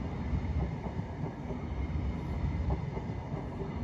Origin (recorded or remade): recorded